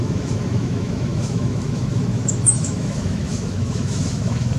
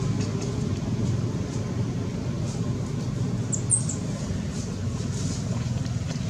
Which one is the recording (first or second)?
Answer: second